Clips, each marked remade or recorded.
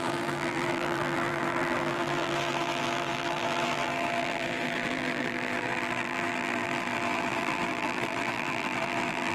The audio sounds remade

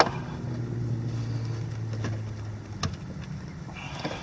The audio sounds recorded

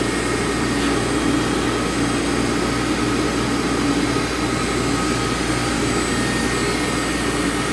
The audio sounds recorded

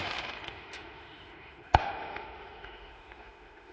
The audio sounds remade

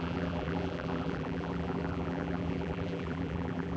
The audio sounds remade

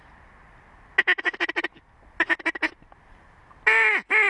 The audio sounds recorded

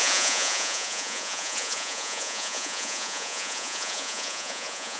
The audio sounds remade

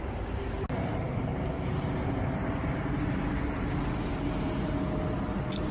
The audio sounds recorded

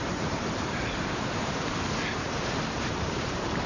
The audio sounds remade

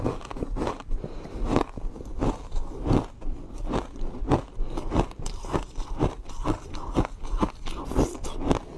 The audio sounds recorded